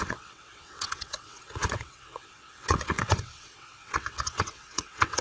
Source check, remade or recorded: remade